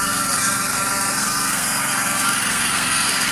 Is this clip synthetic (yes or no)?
yes